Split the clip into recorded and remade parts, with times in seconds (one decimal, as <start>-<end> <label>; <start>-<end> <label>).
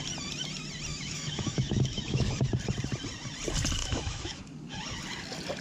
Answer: 0.0-0.9 recorded; 0.9-2.3 remade; 2.3-3.8 recorded; 3.8-4.4 remade; 4.4-5.6 recorded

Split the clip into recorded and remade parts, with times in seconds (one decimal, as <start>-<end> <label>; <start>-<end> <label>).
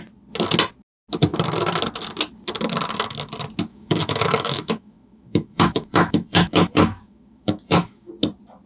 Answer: 0.0-3.7 recorded; 3.7-8.1 remade; 8.1-8.7 recorded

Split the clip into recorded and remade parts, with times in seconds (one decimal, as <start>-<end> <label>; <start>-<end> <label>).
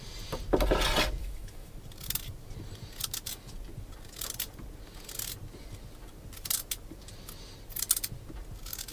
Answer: 0.0-1.2 recorded; 1.2-1.7 remade; 1.7-8.9 recorded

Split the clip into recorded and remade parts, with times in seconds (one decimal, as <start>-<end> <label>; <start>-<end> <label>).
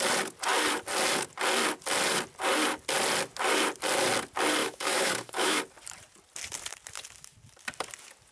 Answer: 0.0-4.6 recorded; 4.6-5.6 remade; 5.6-8.3 recorded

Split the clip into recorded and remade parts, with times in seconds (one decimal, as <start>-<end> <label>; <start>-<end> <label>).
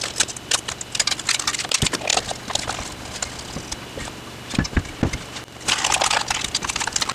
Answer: 0.0-7.1 recorded